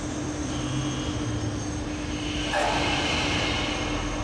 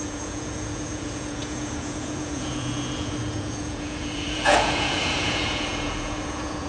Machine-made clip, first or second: second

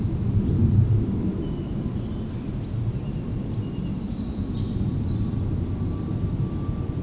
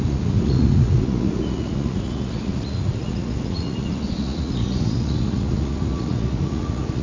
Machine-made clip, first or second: second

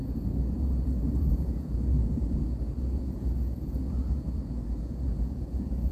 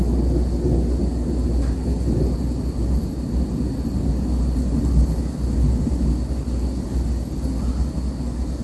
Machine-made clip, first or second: first